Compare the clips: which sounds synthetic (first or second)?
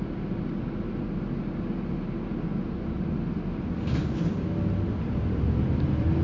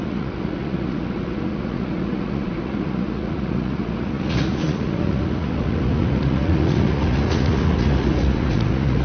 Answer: second